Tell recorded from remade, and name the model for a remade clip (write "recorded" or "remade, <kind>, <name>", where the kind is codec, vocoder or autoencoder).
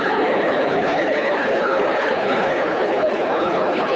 remade, codec, HILCodec